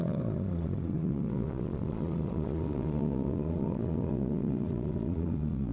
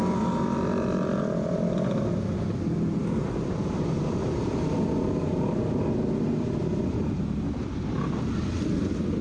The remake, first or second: first